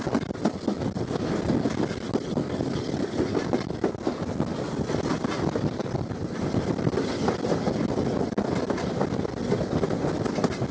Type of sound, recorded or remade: recorded